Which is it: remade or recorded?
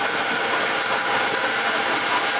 recorded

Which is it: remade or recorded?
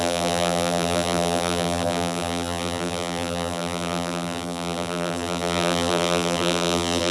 remade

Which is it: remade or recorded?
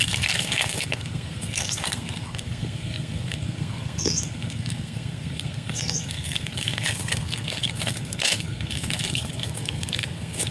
remade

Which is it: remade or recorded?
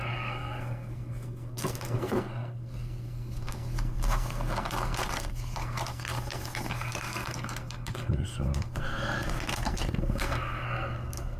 remade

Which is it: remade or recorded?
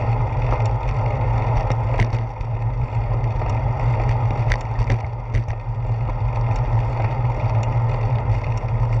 recorded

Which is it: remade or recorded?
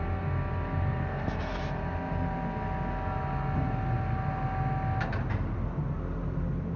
recorded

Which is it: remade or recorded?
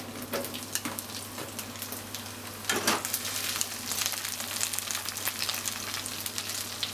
recorded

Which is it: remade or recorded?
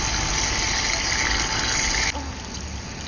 recorded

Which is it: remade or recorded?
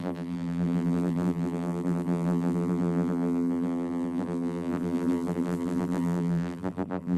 remade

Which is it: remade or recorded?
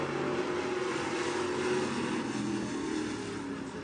recorded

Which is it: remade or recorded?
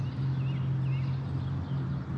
recorded